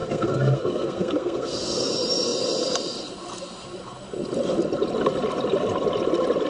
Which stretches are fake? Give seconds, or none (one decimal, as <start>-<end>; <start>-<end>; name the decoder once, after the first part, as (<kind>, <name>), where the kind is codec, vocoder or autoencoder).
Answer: 0.0-1.9 (codec, SNAC)